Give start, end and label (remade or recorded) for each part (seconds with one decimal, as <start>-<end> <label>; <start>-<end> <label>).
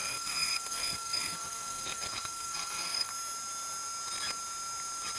0.0-3.1 remade; 3.1-5.2 recorded